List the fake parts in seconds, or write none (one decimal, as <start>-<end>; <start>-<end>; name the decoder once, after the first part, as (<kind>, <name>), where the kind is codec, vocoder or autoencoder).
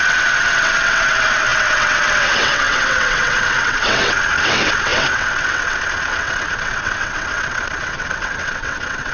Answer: 0.0-9.1 (vocoder, WaveNeXt)